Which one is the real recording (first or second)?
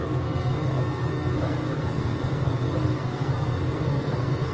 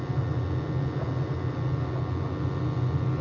second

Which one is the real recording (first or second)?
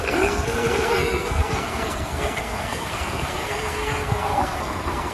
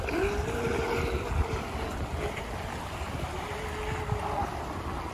second